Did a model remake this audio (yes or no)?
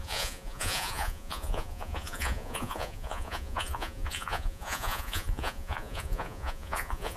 yes